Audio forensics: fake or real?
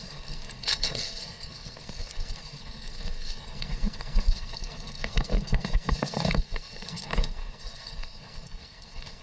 fake